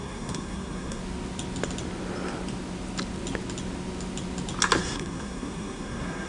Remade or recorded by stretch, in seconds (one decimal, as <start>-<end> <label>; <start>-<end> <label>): 0.0-1.0 remade; 1.0-4.8 recorded; 4.8-6.3 remade